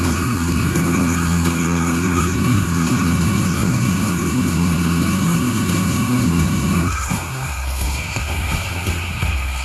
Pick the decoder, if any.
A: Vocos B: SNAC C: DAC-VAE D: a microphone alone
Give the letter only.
B